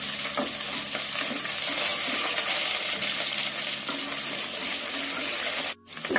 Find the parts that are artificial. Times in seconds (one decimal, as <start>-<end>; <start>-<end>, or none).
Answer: none